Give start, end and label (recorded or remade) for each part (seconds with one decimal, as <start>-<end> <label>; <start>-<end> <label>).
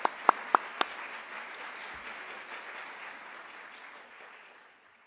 0.0-5.1 recorded